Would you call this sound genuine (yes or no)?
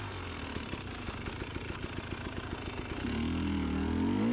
yes